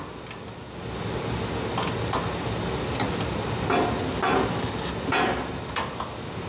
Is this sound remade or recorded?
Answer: recorded